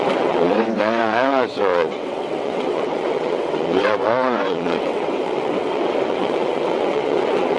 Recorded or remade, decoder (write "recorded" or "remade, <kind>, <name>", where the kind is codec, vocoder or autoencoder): remade, vocoder, WaveNeXt